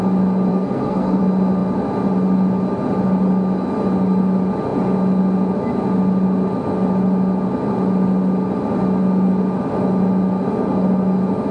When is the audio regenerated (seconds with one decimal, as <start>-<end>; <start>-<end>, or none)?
0.5-1.2